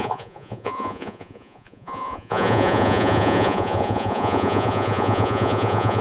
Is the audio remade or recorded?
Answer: remade